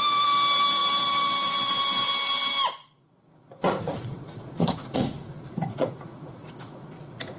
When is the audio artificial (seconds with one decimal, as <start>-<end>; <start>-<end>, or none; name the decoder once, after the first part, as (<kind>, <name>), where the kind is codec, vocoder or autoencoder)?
2.8-7.4 (vocoder, Vocos)